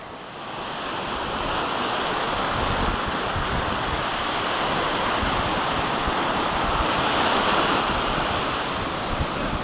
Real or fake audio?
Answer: real